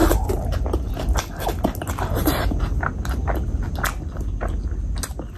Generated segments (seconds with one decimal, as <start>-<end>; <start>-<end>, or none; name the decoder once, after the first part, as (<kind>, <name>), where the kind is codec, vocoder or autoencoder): 0.0-0.9 (vocoder, BigVGAN v2); 2.2-2.9